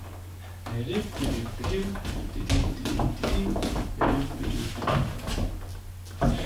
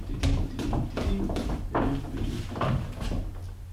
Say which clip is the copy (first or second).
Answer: second